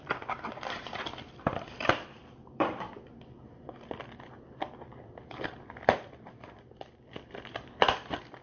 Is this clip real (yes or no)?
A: no